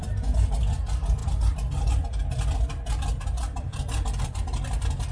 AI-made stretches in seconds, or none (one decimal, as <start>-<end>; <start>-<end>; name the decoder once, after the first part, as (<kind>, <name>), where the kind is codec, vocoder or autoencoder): none